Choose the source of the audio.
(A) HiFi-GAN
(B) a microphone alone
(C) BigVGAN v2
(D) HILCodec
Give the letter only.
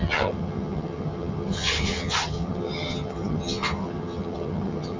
A